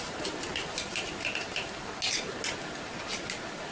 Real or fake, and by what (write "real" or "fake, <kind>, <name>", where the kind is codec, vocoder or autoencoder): real